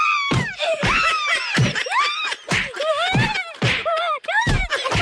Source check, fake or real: fake